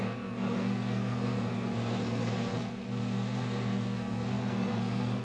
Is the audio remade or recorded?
remade